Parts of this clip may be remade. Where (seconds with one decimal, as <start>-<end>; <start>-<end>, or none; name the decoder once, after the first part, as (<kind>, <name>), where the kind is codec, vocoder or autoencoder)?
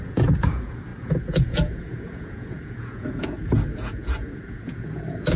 0.0-5.4 (vocoder, Vocos)